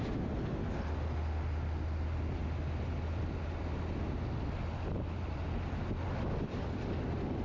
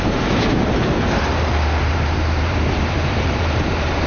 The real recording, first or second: first